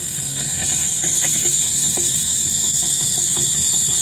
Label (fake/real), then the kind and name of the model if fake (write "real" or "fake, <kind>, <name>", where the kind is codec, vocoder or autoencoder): fake, codec, SNAC